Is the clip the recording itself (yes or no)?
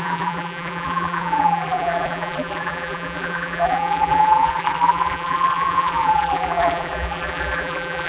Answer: no